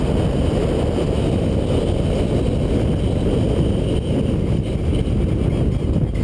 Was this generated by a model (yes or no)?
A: no